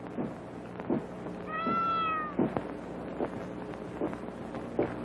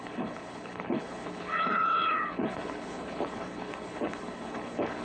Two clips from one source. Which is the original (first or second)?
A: first